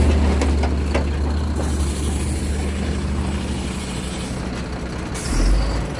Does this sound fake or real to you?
real